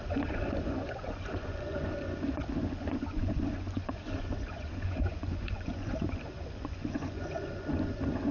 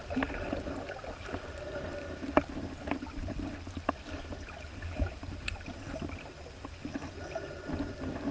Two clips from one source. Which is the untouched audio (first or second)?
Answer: second